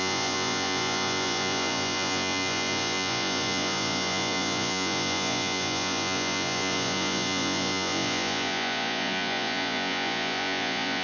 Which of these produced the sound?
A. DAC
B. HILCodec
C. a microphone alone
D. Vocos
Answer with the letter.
D